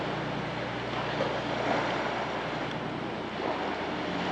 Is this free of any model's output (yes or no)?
yes